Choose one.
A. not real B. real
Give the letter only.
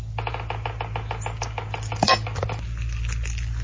B